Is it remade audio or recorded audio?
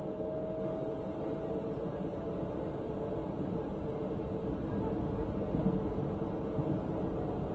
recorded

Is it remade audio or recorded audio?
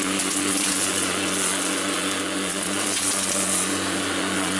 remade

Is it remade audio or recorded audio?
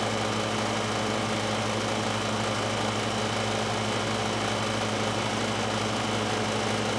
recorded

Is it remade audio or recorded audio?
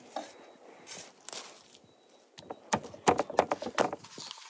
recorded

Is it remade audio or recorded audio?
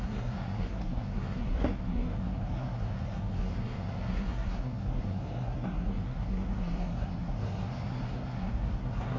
remade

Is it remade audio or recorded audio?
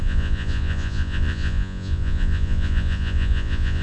remade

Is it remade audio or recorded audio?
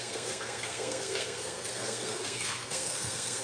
remade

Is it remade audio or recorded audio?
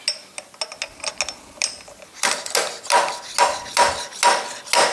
recorded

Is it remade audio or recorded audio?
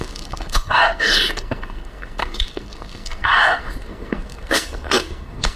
remade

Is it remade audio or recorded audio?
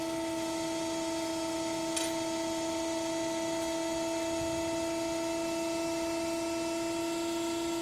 recorded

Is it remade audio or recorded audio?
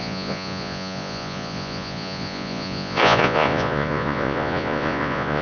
remade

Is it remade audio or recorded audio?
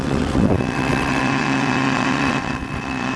remade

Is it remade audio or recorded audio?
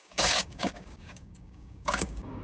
remade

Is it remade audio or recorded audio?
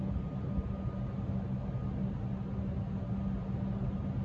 recorded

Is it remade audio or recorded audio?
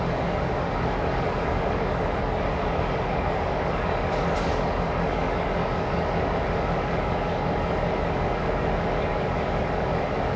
remade